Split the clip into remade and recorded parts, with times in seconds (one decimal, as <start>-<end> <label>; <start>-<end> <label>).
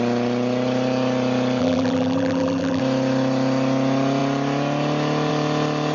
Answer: 0.0-1.6 recorded; 1.6-2.8 remade; 2.8-5.9 recorded